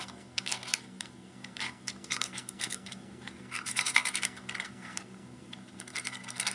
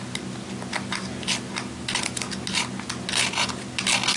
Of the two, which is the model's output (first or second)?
first